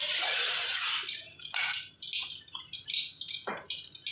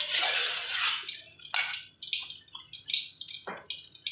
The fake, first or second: first